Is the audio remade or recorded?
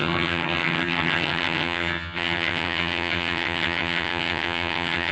remade